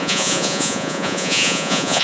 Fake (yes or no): yes